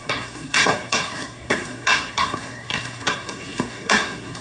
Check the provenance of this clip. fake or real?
fake